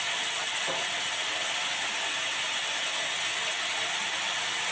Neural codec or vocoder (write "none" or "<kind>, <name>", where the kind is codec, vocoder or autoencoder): none